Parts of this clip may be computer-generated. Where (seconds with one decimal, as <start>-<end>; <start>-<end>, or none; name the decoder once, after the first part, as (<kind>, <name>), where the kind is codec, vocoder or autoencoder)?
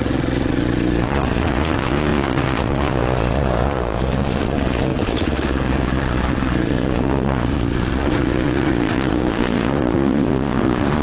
0.0-11.0 (vocoder, Vocos)